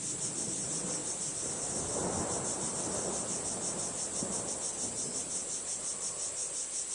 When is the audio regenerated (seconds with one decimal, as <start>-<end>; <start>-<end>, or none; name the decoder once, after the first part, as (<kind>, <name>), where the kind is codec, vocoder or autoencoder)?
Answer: 0.0-1.0 (vocoder, BigVGAN v2); 1.5-6.9

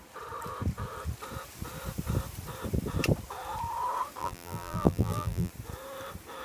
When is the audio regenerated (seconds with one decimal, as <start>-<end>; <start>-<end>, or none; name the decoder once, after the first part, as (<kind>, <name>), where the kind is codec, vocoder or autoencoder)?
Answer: 4.2-5.5 (vocoder, BigVGAN v2)

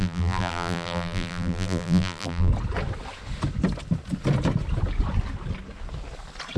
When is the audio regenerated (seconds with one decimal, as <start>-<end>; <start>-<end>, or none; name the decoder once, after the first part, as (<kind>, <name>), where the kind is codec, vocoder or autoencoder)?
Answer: 0.0-2.5 (vocoder, BigVGAN v2)